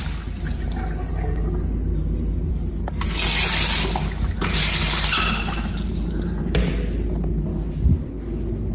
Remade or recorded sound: recorded